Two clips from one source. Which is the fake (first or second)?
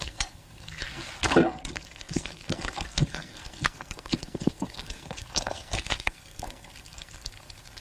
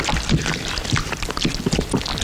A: first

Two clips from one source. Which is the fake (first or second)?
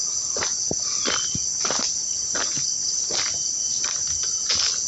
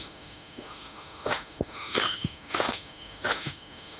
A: second